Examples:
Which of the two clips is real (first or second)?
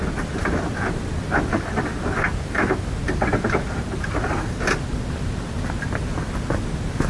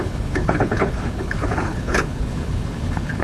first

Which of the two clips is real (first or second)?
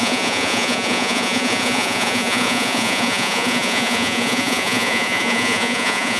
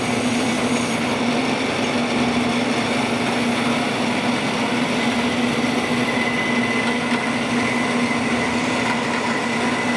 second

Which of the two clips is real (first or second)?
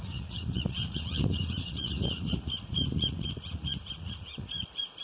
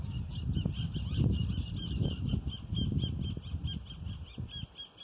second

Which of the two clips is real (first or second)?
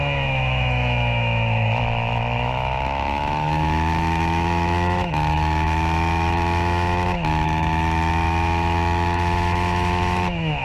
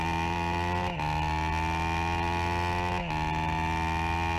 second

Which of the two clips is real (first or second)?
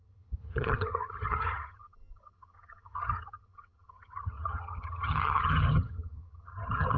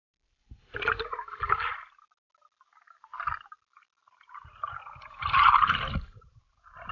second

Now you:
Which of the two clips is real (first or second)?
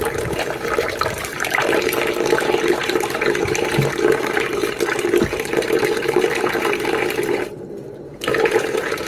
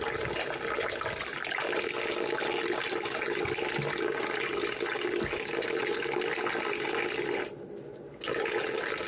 second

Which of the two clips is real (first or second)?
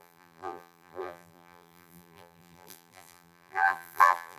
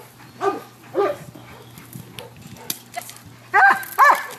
second